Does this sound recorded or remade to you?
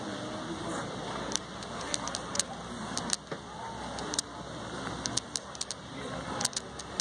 recorded